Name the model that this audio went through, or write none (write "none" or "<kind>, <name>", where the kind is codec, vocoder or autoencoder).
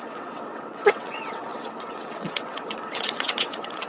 vocoder, WaveNeXt